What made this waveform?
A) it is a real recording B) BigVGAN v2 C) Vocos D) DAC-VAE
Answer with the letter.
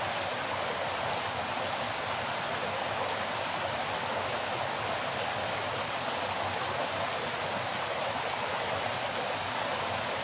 A